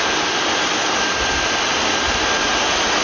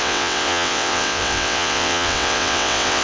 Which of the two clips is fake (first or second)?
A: second